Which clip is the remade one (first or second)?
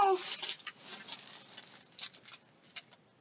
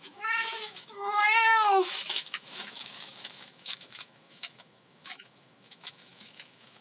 second